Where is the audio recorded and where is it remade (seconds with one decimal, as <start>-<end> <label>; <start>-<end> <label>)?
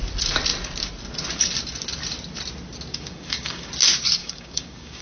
0.0-2.9 recorded; 2.9-3.7 remade; 3.7-4.2 recorded; 4.2-5.0 remade